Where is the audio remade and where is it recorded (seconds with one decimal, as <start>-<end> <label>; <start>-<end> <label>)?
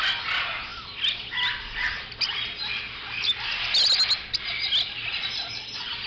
0.0-6.1 recorded